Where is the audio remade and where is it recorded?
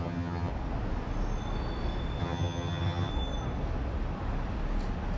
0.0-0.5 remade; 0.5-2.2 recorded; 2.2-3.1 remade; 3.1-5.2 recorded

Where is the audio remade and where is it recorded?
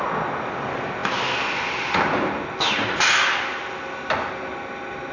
0.0-5.1 recorded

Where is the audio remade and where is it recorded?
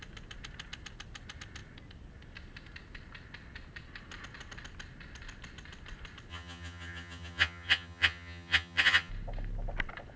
0.0-6.3 recorded; 6.3-9.1 remade; 9.1-10.2 recorded